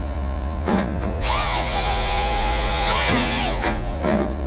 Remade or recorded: remade